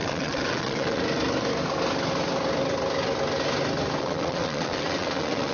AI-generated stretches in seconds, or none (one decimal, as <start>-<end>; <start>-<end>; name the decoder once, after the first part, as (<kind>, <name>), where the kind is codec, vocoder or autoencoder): 0.0-1.0 (vocoder, WaveNeXt); 4.0-5.5